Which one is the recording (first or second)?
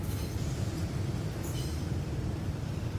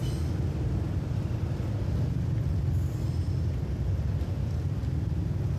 second